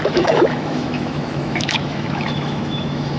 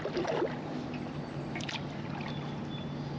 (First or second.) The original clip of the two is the second